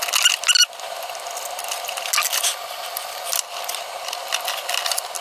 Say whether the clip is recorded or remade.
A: recorded